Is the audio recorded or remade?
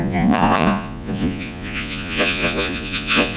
remade